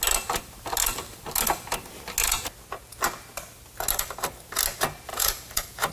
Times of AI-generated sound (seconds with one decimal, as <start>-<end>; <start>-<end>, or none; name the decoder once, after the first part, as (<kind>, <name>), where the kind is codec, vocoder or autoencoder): 5.1-5.9 (vocoder, Vocos)